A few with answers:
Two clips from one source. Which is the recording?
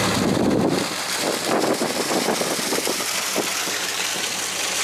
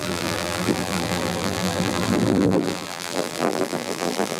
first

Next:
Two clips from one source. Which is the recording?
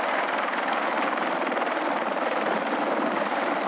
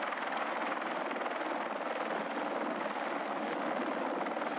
second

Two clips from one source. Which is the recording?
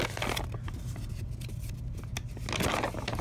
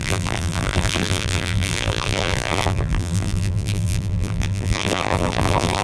first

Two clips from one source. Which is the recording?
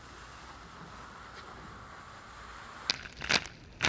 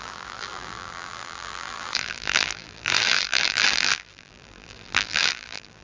first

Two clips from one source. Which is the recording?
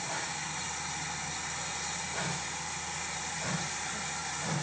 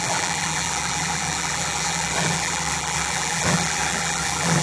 first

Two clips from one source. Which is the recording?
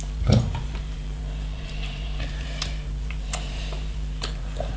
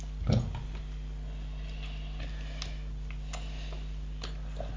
second